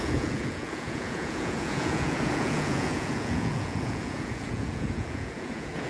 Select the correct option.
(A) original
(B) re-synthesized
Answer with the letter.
B